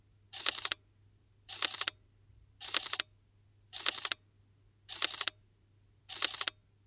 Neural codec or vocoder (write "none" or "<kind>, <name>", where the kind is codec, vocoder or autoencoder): none